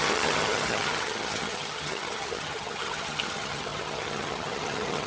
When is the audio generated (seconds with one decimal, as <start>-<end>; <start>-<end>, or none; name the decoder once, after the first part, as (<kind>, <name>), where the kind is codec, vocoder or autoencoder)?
0.0-5.1 (vocoder, HiFi-GAN)